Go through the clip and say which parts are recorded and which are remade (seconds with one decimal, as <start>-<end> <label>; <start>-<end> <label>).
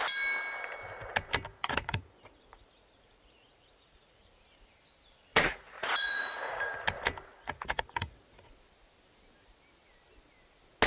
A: 0.0-1.5 recorded; 1.5-4.2 remade; 4.2-5.3 recorded; 5.3-6.8 remade; 6.8-7.3 recorded; 7.3-8.5 remade; 8.5-10.9 recorded